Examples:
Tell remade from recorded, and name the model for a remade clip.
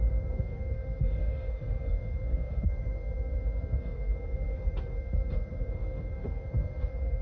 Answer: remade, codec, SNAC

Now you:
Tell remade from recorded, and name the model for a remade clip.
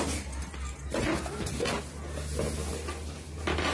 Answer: recorded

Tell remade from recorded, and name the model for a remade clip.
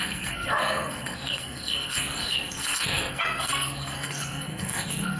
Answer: remade, codec, SNAC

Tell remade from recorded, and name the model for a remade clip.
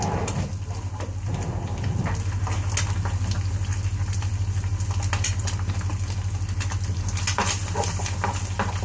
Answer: recorded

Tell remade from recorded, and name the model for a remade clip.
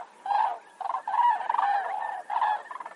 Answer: recorded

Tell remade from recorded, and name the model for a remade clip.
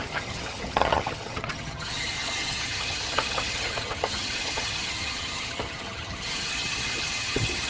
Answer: remade, vocoder, HiFi-GAN